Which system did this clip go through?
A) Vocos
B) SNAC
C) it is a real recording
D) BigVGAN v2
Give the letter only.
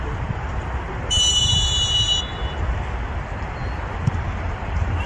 D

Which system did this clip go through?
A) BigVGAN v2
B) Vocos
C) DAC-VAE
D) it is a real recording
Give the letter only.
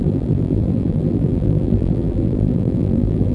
A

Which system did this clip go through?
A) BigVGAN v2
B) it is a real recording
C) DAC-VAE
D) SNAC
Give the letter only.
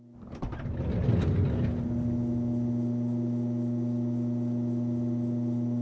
B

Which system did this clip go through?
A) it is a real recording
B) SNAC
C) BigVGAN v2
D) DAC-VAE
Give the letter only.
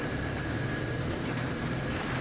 C